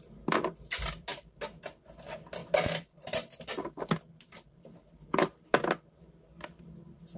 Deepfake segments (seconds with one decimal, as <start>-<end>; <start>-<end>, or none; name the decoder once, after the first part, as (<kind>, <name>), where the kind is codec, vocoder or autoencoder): none